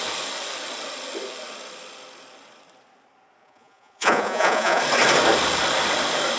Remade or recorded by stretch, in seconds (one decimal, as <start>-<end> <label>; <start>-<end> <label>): 0.0-3.4 recorded; 3.4-4.8 remade; 4.8-6.4 recorded